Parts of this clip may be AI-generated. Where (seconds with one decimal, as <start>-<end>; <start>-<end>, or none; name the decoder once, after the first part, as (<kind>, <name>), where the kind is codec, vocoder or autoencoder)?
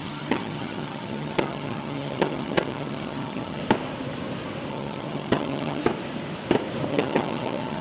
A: 0.0-3.6 (vocoder, HiFi-GAN); 4.7-5.8; 6.9-7.8